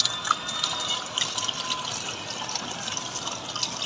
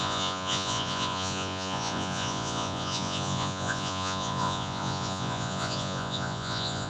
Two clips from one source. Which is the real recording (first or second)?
first